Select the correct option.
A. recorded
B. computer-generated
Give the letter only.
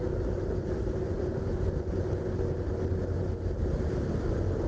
A